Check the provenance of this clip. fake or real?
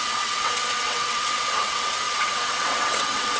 fake